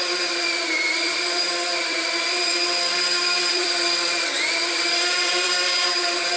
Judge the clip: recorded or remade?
remade